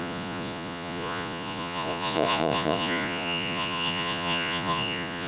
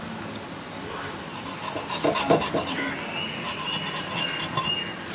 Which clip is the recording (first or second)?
second